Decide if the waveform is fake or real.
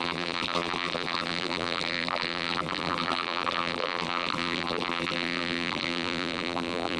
fake